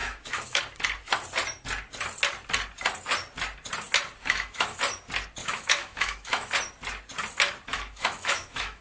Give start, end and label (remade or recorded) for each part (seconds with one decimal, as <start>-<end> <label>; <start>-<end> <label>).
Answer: 0.0-0.6 remade; 0.6-4.2 recorded; 4.2-4.8 remade; 4.8-5.4 recorded; 5.4-6.5 remade; 6.5-7.7 recorded; 7.7-8.8 remade